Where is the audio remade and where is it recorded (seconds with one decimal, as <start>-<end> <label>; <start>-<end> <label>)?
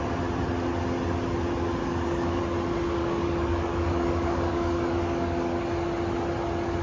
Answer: 0.0-1.8 recorded; 1.8-2.4 remade; 2.4-3.0 recorded; 3.0-5.6 remade; 5.6-6.8 recorded